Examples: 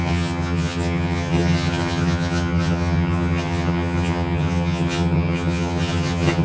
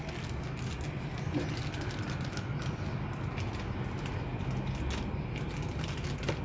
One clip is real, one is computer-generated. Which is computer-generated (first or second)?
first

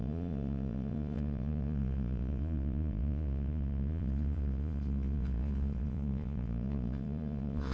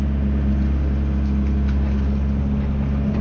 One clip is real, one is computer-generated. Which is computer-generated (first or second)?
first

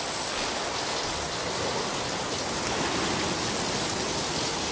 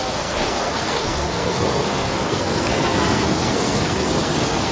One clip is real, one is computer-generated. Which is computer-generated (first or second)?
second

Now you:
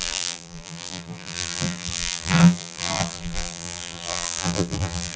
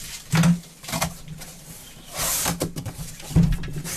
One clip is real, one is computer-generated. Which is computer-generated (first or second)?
first